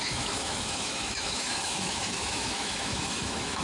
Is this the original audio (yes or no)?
no